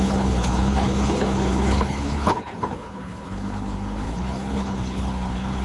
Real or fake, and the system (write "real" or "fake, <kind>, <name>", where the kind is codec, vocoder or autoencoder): fake, codec, HILCodec